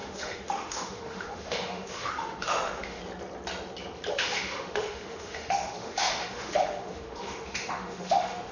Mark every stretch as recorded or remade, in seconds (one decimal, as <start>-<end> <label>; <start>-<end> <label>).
0.0-3.0 remade; 3.0-4.1 recorded; 4.1-8.5 remade